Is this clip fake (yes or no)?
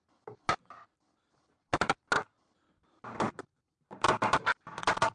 no